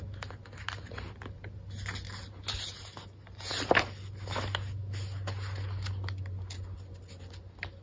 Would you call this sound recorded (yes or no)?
yes